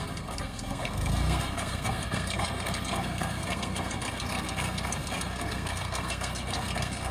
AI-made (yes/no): yes